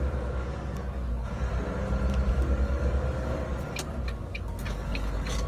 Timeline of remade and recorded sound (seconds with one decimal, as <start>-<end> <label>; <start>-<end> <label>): 0.0-1.5 remade; 1.5-2.3 recorded; 2.3-3.5 remade; 3.5-4.2 recorded; 4.2-5.5 remade